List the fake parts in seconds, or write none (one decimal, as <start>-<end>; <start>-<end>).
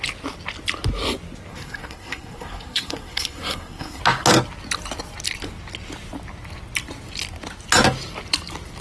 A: 1.5-4.0